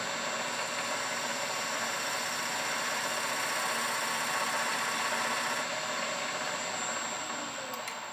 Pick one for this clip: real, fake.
real